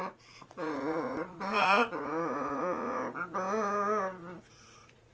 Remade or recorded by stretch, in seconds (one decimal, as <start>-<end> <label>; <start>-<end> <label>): 0.0-3.0 remade; 3.0-4.5 recorded; 4.5-5.1 remade